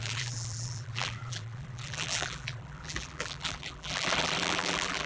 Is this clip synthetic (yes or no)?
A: yes